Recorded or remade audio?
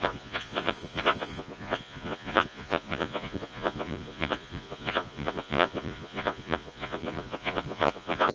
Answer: remade